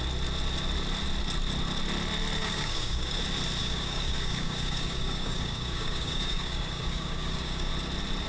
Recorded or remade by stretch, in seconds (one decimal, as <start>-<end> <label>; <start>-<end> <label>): 0.0-2.4 recorded; 2.4-3.2 remade; 3.2-3.6 recorded; 3.6-7.7 remade; 7.7-8.3 recorded